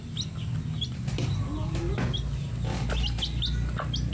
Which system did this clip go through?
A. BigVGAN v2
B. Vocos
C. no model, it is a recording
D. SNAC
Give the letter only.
C